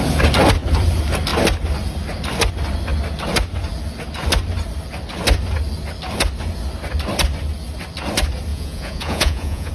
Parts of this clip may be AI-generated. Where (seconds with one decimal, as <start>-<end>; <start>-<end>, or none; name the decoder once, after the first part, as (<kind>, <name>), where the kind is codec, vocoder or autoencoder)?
8.5-9.7 (vocoder, Vocos)